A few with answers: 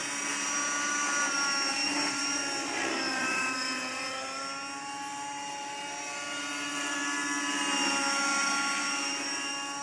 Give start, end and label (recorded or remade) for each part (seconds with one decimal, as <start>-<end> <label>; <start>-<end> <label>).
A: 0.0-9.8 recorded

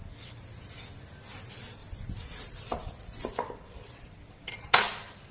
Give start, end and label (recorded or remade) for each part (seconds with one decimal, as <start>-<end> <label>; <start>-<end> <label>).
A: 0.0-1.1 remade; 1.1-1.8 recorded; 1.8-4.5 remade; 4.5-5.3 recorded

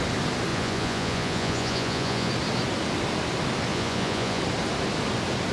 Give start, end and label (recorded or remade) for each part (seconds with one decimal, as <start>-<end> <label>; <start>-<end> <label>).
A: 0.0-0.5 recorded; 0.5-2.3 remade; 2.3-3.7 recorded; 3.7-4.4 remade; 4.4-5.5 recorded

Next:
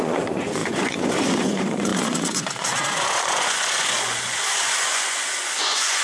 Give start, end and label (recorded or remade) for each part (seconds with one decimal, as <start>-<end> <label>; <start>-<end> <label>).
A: 0.0-6.0 remade

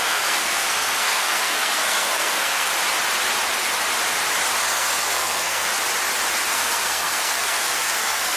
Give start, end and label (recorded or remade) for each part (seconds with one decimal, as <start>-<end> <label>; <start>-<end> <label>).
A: 0.0-2.7 remade; 2.7-4.6 recorded; 4.6-5.7 remade; 5.7-6.5 recorded; 6.5-8.4 remade

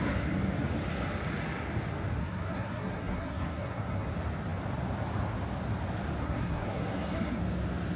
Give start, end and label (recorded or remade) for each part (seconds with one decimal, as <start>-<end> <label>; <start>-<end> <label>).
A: 0.0-2.2 recorded; 2.2-4.1 remade; 4.1-6.2 recorded; 6.2-7.4 remade; 7.4-8.0 recorded

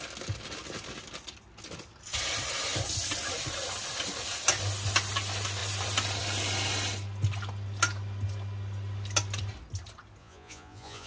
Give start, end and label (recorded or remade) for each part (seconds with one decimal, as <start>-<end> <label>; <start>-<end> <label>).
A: 0.0-10.2 recorded; 10.2-11.1 remade

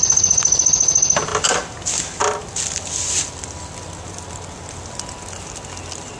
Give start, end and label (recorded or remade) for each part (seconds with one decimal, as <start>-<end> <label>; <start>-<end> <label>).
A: 0.0-6.2 recorded